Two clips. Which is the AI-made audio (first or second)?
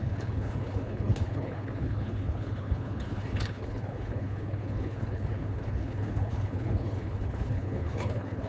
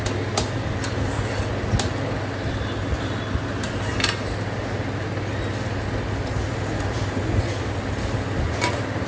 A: first